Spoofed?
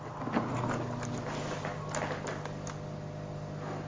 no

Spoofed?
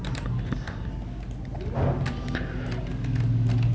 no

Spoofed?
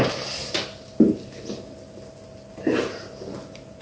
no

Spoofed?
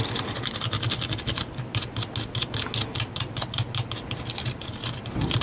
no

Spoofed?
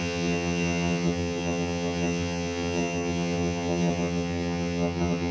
yes